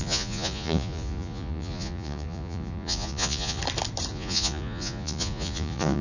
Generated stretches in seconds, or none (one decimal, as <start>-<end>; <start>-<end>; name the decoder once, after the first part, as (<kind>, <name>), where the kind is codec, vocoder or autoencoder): 0.0-3.6 (vocoder, Vocos); 4.1-6.0